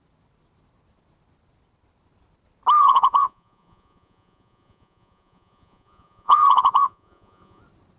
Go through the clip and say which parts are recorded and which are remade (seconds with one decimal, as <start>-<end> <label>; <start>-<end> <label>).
0.0-2.8 recorded; 2.8-7.6 remade; 7.6-8.0 recorded